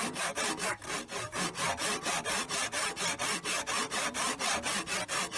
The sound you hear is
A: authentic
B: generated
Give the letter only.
A